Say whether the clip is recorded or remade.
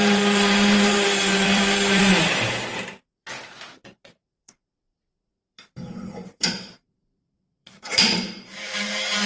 remade